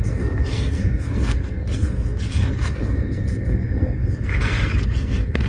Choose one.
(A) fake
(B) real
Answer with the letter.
A